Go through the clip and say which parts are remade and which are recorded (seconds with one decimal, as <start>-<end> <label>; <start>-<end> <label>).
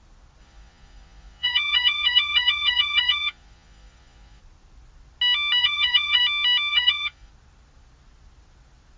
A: 0.0-0.4 recorded; 0.4-4.4 remade; 4.4-5.6 recorded; 5.6-6.2 remade; 6.2-6.7 recorded; 6.7-7.3 remade; 7.3-9.0 recorded